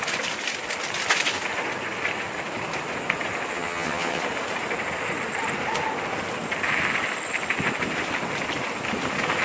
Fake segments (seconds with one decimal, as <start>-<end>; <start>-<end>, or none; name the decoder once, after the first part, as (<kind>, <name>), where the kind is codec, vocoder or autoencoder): 3.5-4.2 (vocoder, HiFi-GAN)